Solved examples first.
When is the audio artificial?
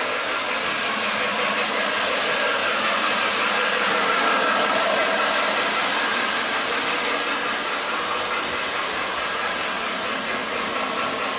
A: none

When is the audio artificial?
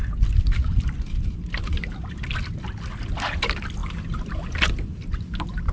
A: none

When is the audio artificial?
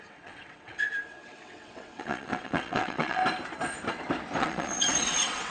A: 0.0-3.2 (vocoder, WaveNeXt); 4.4-5.5